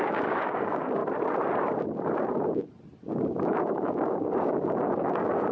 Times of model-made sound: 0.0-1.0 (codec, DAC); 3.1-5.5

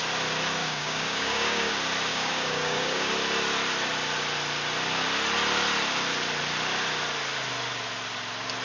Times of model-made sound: 0.6-1.7 (codec, DAC); 2.1-3.1

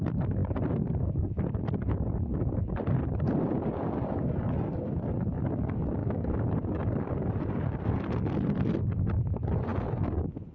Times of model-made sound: 6.0-6.5 (codec, DAC)

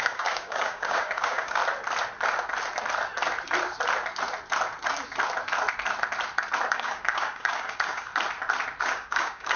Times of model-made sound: 0.0-1.6 (codec, DAC); 6.7-8.1; 8.8-9.6